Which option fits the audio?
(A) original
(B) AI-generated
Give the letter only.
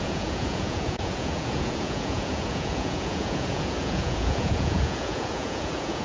B